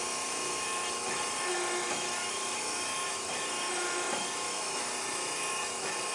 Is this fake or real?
fake